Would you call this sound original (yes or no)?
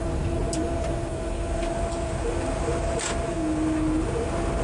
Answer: yes